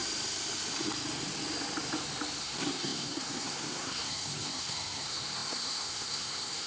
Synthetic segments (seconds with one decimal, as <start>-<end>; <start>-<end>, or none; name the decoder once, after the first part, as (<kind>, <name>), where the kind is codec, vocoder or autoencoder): 2.4-6.7 (codec, SNAC)